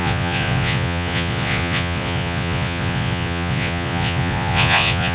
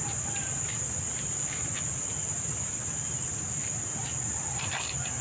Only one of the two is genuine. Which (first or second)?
second